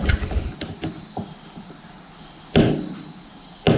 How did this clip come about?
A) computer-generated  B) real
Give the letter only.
B